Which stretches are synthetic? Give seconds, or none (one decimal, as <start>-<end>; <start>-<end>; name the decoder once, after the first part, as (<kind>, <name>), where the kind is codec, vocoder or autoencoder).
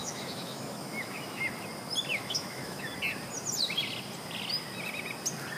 0.0-1.4 (autoencoder, DAC-VAE); 2.1-2.9